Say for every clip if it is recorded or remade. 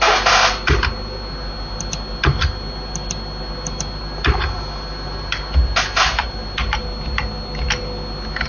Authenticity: recorded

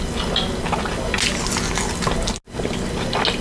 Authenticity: recorded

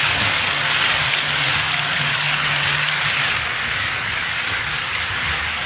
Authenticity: remade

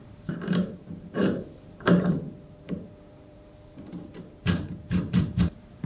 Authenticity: remade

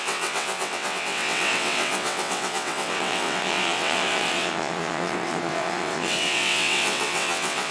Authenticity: remade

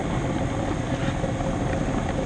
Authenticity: recorded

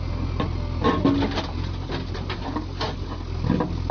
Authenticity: recorded